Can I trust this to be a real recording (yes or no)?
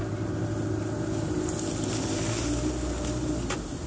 yes